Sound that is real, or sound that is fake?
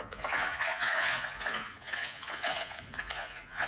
fake